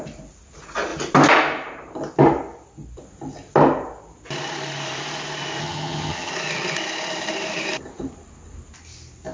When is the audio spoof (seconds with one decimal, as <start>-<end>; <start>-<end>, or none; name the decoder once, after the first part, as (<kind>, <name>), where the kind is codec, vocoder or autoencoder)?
5.6-6.3 (vocoder, HiFi-GAN)